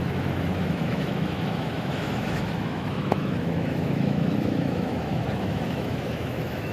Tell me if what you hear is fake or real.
fake